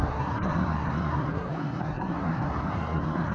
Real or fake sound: fake